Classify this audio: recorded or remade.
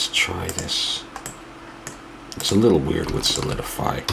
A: recorded